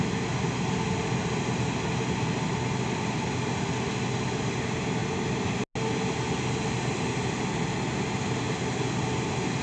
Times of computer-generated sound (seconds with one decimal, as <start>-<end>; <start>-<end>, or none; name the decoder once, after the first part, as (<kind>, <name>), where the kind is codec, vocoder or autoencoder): none